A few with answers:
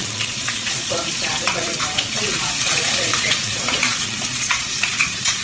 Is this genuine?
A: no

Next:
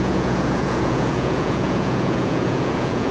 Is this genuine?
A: no